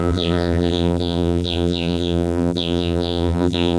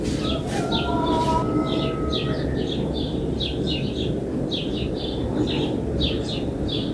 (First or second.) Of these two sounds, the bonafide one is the second